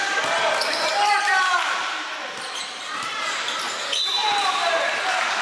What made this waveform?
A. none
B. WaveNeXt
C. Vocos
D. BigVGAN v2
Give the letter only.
D